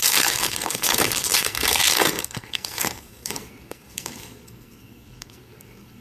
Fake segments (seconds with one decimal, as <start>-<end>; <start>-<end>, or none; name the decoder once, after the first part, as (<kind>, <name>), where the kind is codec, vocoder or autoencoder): 0.0-6.0 (codec, SNAC)